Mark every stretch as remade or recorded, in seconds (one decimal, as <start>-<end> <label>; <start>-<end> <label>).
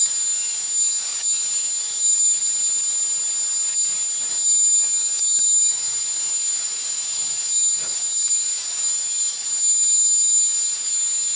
0.0-2.4 remade; 2.4-4.3 recorded; 4.3-11.4 remade